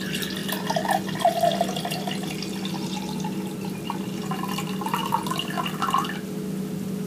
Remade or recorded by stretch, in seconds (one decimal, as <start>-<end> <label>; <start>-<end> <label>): 0.0-7.1 recorded